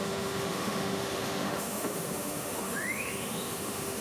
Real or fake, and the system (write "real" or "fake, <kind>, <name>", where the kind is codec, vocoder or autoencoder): fake, autoencoder, DAC-VAE